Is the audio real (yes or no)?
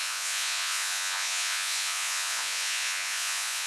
no